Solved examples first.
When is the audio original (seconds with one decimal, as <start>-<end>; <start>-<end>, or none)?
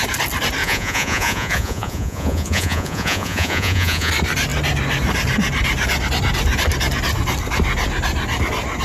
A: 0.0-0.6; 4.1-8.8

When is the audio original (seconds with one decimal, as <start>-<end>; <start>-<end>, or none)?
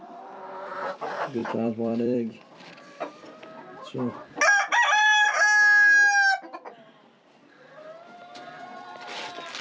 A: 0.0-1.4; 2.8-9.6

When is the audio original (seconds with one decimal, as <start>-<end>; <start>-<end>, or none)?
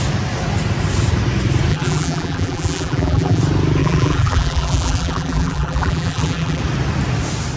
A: 0.0-1.7; 3.4-3.8; 6.6-7.6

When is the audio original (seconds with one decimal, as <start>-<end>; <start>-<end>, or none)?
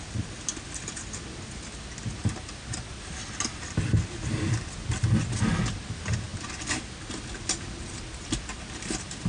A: 0.0-9.3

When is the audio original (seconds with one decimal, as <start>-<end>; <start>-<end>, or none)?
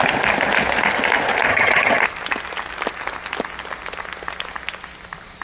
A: 0.0-1.5; 2.0-5.4